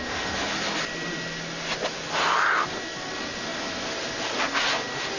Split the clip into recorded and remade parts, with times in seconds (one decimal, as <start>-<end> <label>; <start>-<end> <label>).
0.0-5.2 recorded

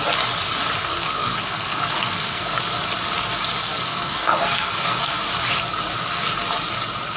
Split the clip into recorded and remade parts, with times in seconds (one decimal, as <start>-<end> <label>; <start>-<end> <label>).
0.0-0.8 recorded; 0.8-2.6 remade; 2.6-3.6 recorded; 3.6-5.3 remade; 5.3-7.2 recorded

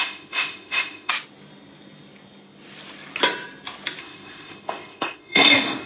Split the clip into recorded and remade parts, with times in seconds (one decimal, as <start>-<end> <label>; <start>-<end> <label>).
0.0-1.1 remade; 1.1-4.0 recorded; 4.0-5.9 remade

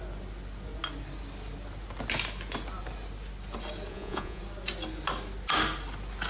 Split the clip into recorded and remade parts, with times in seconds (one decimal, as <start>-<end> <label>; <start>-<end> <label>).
0.0-3.9 recorded; 3.9-4.4 remade; 4.4-6.3 recorded

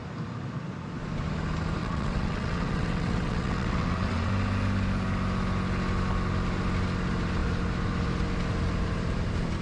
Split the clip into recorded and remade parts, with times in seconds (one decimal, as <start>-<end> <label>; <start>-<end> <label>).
0.0-1.8 recorded; 1.8-4.3 remade; 4.3-9.6 recorded

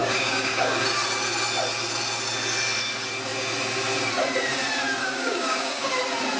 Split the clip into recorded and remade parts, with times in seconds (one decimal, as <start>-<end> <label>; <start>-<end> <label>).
0.0-0.8 remade; 0.8-5.0 recorded; 5.0-5.9 remade; 5.9-6.4 recorded

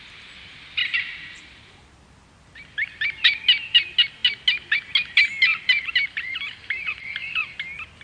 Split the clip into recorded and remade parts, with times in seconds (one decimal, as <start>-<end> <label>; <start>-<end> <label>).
0.0-0.8 recorded; 0.8-1.4 remade; 1.4-5.5 recorded; 5.5-7.6 remade; 7.6-8.0 recorded

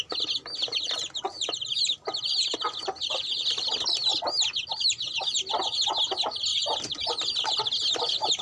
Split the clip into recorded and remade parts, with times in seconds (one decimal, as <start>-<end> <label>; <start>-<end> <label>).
0.0-8.4 recorded